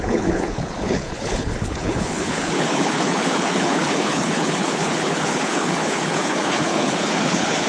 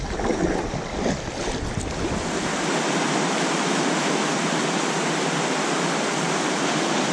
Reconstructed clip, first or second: first